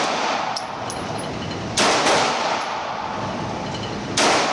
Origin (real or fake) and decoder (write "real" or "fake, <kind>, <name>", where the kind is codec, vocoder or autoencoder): real